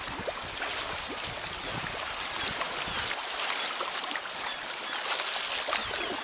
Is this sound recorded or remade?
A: recorded